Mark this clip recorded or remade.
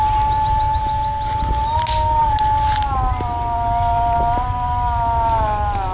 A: recorded